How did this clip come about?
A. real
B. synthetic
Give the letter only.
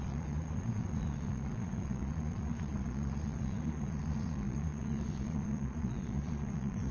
B